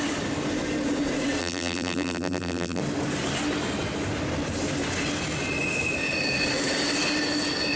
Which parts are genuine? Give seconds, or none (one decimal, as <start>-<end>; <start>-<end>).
0.0-1.4; 2.8-7.8